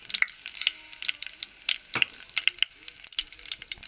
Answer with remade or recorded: recorded